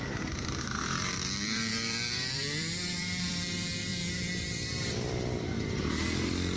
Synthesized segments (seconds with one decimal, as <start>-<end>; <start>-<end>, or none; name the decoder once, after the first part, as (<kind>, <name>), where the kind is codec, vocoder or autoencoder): 0.0-6.6 (vocoder, BigVGAN v2)